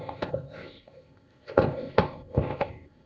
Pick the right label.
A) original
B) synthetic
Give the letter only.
B